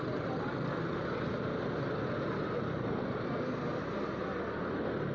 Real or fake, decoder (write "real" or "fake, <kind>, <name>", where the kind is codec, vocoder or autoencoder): real